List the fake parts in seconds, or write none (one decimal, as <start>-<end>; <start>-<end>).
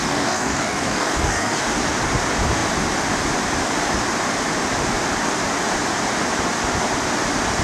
0.0-1.6